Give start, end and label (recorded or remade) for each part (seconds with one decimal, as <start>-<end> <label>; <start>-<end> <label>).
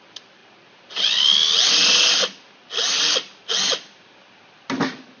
0.0-5.2 recorded